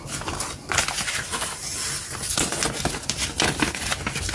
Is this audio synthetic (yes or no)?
no